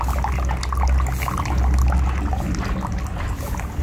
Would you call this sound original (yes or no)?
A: yes